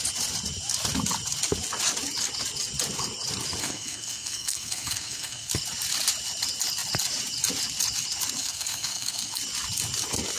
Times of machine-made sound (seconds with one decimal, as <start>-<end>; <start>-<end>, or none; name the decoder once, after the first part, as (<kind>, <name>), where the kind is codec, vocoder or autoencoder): 3.6-5.5 (codec, SNAC); 8.4-9.4